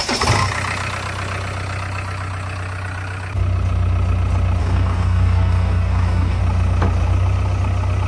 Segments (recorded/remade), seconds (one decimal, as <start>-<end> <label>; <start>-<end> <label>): 0.0-4.6 recorded; 4.6-6.4 remade; 6.4-8.1 recorded